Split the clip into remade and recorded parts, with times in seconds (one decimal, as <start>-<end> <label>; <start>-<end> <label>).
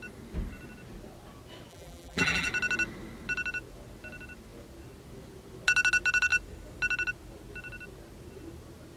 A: 0.0-1.7 recorded; 1.7-2.5 remade; 2.5-9.0 recorded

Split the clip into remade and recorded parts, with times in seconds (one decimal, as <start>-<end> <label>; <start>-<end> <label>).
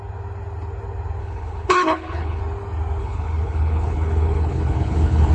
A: 0.0-1.2 recorded; 1.2-2.4 remade; 2.4-3.0 recorded; 3.0-5.3 remade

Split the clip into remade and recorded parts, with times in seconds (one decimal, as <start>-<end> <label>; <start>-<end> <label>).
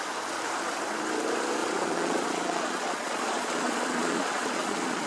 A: 0.0-1.6 recorded; 1.6-5.1 remade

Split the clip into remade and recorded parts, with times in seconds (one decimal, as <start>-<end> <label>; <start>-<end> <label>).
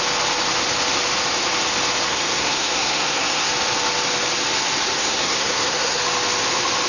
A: 0.0-2.1 recorded; 2.1-3.5 remade; 3.5-5.0 recorded; 5.0-6.0 remade; 6.0-6.9 recorded